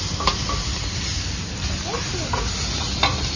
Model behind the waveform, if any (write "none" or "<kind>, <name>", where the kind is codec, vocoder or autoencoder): none